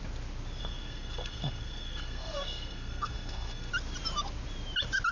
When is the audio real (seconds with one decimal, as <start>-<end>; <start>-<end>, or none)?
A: 0.0-0.6; 3.7-5.1